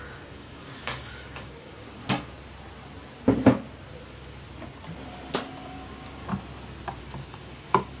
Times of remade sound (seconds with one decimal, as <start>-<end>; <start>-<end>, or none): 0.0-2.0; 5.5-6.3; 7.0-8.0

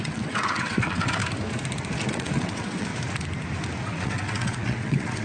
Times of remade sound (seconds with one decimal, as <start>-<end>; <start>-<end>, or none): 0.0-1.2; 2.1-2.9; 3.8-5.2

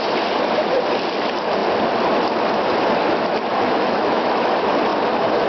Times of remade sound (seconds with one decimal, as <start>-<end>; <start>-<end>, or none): 3.5-4.5

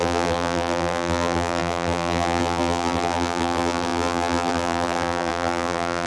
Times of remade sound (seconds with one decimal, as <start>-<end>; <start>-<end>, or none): 0.0-6.1

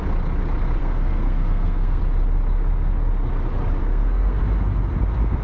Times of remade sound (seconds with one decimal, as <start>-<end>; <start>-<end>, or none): 0.8-2.0; 3.8-4.4

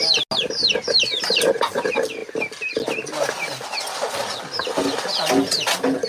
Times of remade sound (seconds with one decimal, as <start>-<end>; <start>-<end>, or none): none

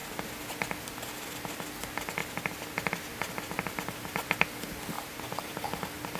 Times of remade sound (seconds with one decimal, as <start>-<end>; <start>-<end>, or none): none